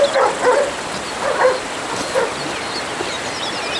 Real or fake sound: real